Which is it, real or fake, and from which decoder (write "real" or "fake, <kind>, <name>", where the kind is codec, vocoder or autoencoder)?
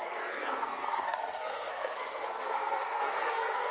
fake, codec, SNAC